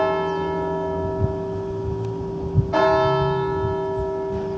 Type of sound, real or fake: real